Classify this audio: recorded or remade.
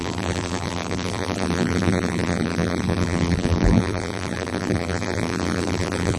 remade